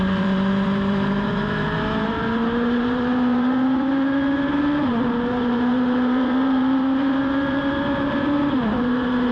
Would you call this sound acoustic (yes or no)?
no